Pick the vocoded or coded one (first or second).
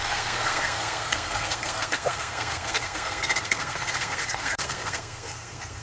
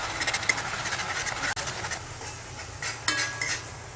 first